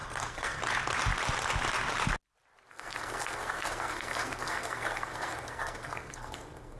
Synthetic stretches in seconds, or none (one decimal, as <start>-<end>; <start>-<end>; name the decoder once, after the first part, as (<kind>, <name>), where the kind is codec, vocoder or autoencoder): 0.0-0.6 (codec, SNAC); 2.7-6.8